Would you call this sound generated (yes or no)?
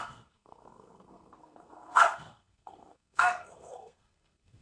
yes